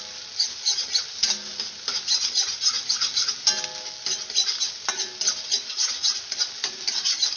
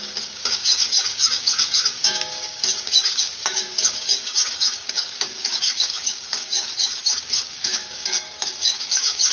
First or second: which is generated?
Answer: second